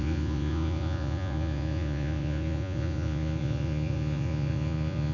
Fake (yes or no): yes